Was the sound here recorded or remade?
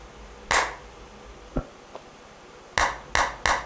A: recorded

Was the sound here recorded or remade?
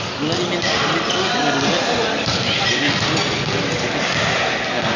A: recorded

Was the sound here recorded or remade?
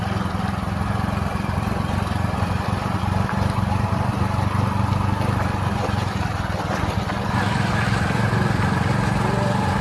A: recorded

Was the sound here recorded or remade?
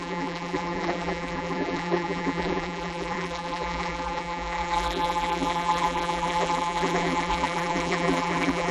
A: remade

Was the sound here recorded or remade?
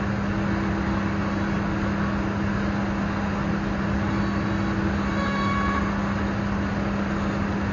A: recorded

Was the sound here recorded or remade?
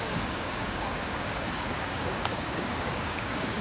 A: remade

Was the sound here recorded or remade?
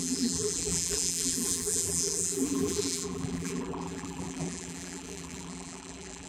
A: remade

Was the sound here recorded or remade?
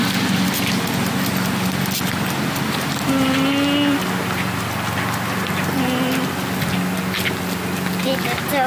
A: recorded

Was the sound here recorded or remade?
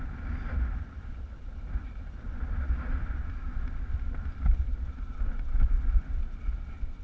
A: recorded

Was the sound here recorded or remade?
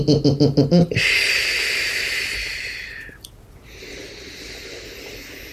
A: recorded